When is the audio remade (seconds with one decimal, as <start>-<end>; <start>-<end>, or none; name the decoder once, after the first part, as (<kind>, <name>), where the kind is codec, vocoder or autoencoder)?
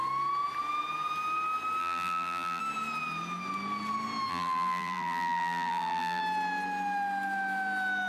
1.8-2.6 (vocoder, BigVGAN v2); 4.3-6.2